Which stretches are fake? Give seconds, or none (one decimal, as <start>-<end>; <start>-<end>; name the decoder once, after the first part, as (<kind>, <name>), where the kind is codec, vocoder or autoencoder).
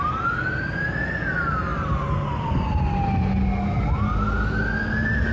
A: 1.7-2.8 (vocoder, BigVGAN v2)